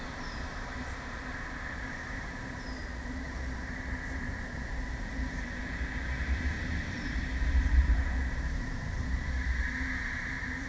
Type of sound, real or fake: fake